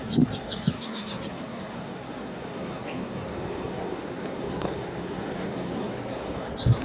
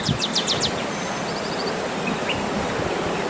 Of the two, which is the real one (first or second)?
second